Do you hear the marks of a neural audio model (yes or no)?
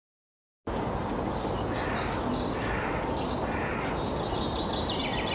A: no